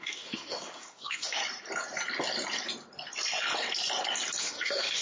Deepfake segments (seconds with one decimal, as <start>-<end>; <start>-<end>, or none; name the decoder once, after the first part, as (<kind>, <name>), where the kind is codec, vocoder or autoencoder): 0.0-1.4 (autoencoder, DAC-VAE); 4.4-5.0